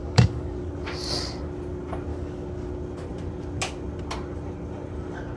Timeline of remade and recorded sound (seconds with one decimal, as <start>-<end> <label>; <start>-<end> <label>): 0.0-0.7 remade; 0.7-2.1 recorded; 2.1-2.7 remade; 2.7-5.4 recorded